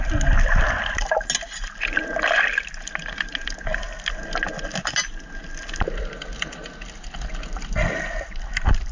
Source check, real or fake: real